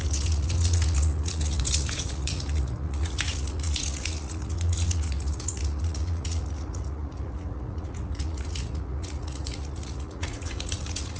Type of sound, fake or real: fake